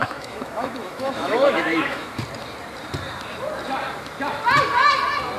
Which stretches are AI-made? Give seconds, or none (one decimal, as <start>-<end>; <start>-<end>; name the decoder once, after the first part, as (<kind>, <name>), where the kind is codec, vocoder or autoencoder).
0.0-2.2 (autoencoder, DAC-VAE)